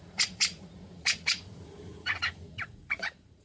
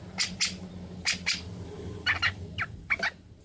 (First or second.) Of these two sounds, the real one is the second